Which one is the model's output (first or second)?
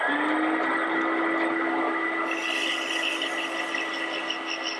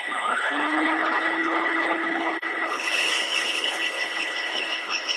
second